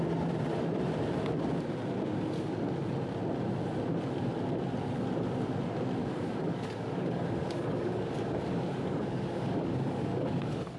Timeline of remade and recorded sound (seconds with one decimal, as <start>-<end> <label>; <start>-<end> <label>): 0.0-6.0 recorded; 6.0-10.8 remade